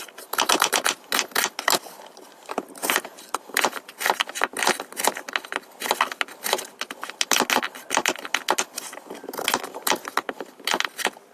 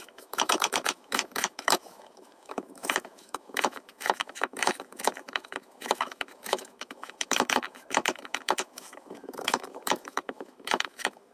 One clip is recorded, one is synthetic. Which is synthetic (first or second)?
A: second